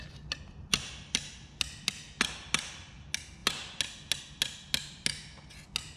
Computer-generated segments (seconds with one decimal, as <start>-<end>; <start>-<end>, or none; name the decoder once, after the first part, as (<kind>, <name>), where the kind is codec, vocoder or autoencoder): none